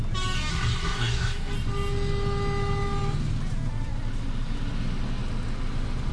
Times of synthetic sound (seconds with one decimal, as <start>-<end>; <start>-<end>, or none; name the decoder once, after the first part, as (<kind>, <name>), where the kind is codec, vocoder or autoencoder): 0.5-1.5 (codec, SNAC)